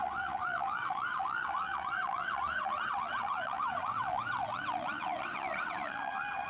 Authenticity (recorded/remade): remade